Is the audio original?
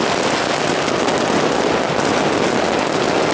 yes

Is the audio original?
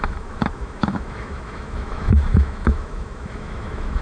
no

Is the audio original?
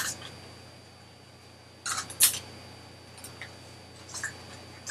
yes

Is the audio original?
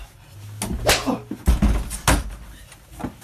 yes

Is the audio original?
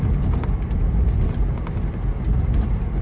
yes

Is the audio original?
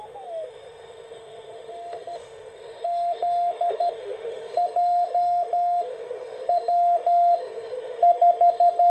no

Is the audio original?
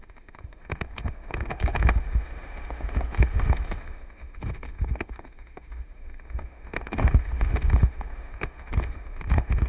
no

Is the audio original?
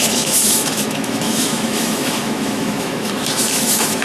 no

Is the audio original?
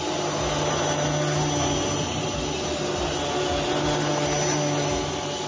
yes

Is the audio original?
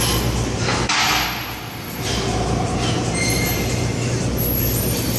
yes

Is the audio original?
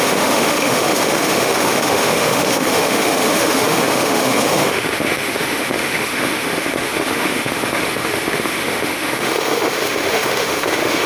no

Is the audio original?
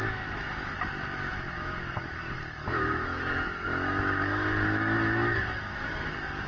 no